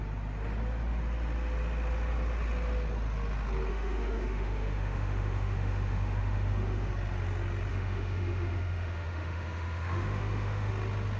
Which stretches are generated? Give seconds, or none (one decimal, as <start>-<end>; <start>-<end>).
3.7-6.9; 7.7-10.7